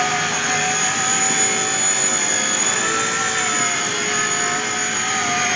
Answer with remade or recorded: recorded